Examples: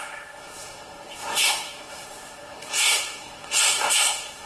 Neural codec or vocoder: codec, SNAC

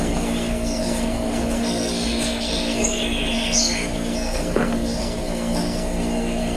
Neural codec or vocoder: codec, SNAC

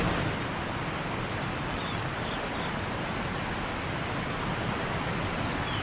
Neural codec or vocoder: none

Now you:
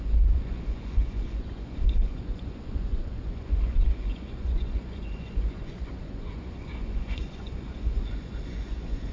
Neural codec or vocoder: vocoder, Vocos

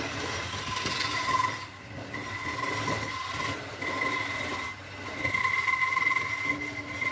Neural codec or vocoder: none